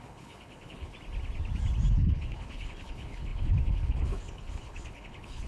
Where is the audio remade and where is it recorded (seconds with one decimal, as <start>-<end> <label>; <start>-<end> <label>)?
0.0-0.9 remade; 0.9-1.9 recorded; 1.9-5.5 remade